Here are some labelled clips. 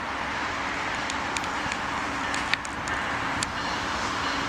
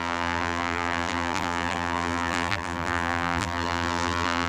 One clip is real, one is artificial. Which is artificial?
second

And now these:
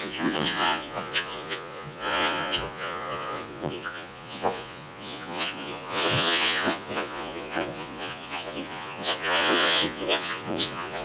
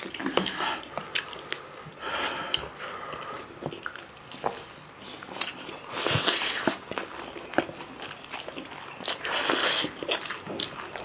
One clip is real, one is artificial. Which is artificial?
first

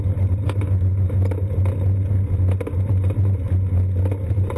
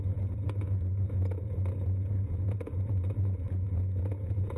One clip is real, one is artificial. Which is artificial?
second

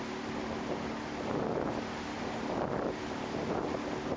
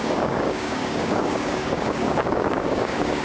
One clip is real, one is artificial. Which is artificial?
second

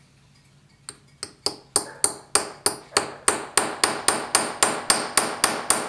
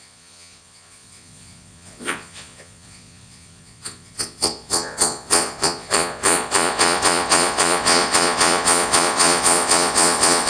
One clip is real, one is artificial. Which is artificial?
second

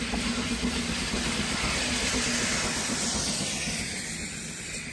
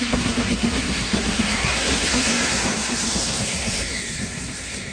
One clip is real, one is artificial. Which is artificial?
second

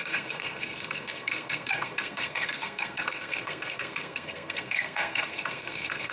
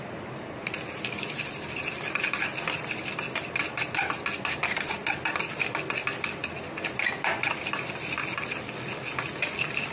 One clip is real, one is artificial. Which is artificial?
first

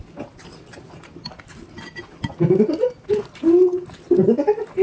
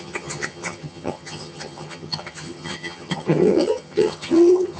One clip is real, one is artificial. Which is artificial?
second